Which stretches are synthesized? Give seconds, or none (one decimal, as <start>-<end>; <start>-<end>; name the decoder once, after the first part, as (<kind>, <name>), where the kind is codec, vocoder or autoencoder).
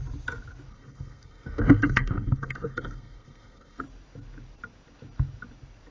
0.7-3.8 (codec, SNAC)